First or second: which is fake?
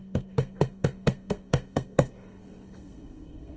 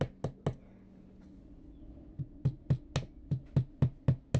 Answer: first